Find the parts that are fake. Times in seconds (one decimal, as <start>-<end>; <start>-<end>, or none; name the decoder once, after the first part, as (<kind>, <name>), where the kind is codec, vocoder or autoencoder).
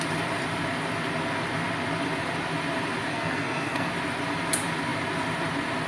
3.1-3.9 (codec, SNAC)